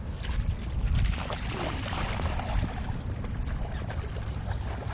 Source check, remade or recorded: recorded